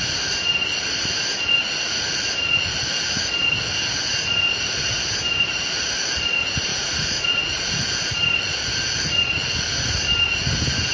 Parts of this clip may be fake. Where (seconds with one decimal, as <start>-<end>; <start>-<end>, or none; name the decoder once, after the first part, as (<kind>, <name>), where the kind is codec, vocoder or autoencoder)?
6.7-7.7 (vocoder, Vocos)